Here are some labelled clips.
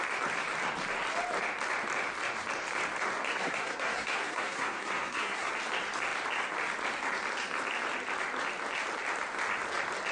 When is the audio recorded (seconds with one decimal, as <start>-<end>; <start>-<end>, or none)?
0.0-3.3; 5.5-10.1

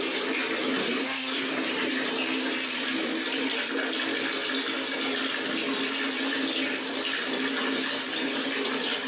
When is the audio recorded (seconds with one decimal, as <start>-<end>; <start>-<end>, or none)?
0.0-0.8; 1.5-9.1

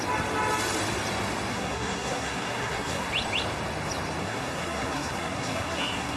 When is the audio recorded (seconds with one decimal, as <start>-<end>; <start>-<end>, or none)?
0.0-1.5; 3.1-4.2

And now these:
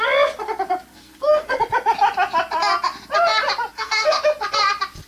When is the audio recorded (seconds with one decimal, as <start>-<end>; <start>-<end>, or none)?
0.0-0.9; 1.6-3.7; 4.2-5.1

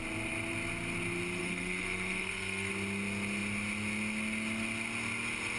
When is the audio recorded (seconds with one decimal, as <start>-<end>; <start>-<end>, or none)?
0.0-1.4; 2.7-5.6

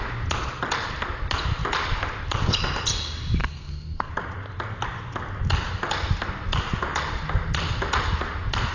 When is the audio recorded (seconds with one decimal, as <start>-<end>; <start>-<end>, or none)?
0.0-3.4; 4.1-8.7